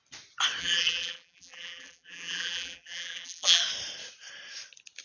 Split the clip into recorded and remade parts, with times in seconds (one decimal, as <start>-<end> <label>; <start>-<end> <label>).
0.0-0.6 recorded; 0.6-3.6 remade; 3.6-5.0 recorded